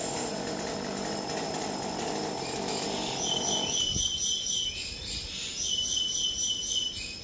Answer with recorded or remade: recorded